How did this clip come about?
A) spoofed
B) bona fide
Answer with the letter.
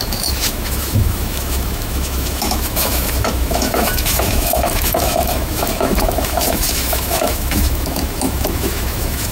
A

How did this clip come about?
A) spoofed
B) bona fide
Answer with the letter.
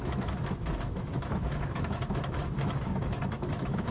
A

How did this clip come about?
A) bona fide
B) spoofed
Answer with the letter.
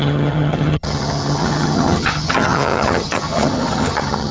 B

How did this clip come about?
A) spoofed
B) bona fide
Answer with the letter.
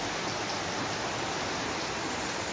B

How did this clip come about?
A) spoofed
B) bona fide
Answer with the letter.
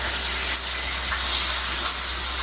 B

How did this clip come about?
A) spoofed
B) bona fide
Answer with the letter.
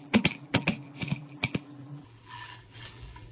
A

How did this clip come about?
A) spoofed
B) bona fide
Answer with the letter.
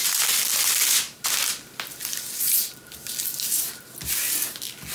B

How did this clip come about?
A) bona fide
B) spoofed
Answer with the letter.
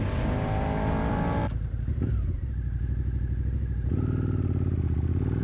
A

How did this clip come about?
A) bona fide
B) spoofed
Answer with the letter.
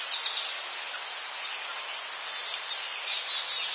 A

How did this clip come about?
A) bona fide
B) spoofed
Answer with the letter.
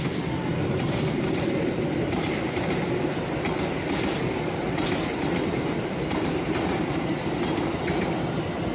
A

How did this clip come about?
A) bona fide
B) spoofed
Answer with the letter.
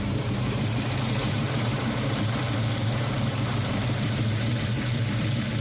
B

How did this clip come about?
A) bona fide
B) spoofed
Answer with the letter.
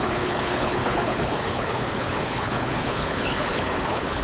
B